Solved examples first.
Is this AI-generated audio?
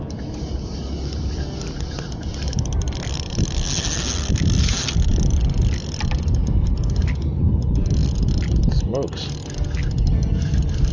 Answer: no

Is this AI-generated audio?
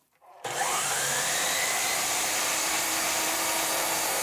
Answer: yes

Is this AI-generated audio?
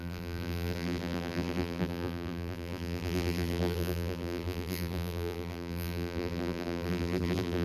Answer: yes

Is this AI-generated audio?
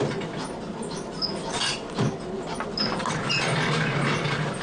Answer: no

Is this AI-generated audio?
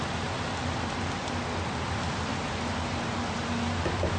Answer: no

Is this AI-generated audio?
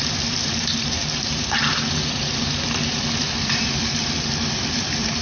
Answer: yes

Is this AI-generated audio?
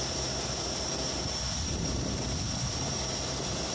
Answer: yes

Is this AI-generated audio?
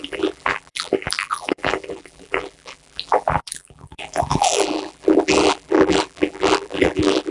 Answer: yes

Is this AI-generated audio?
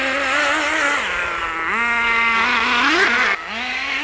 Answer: no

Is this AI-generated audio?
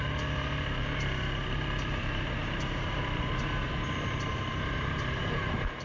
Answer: yes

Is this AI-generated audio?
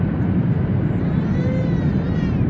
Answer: yes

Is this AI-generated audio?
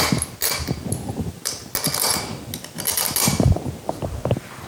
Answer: no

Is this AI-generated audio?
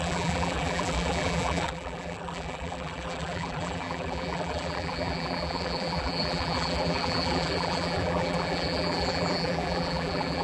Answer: yes